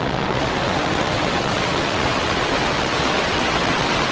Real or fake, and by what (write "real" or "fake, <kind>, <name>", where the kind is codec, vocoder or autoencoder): fake, vocoder, WaveNeXt